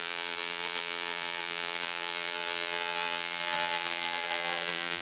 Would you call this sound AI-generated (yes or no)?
yes